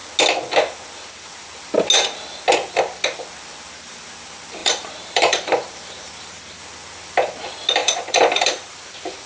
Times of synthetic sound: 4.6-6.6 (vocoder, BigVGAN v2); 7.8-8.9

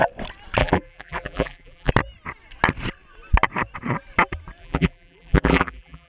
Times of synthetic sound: 0.6-1.9 (vocoder, BigVGAN v2); 4.6-6.1

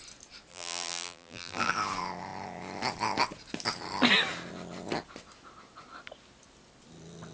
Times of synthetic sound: 0.5-1.7 (vocoder, BigVGAN v2)

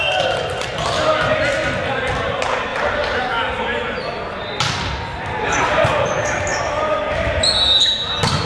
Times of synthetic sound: 2.7-3.3 (vocoder, BigVGAN v2); 6.5-7.0

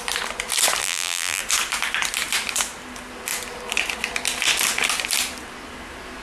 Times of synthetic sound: 0.8-1.4 (vocoder, BigVGAN v2)